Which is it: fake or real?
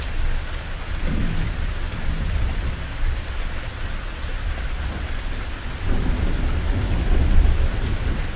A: real